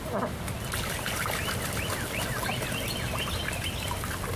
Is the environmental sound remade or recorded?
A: recorded